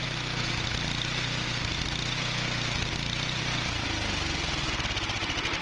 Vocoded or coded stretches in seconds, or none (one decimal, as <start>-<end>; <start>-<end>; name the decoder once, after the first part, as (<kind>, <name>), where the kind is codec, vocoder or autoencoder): none